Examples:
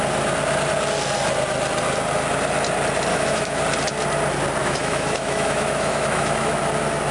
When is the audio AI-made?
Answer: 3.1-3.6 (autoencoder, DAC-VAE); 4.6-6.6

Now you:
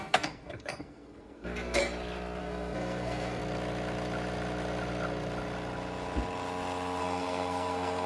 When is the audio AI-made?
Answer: 0.0-1.8 (codec, SNAC); 2.4-3.4; 7.0-8.1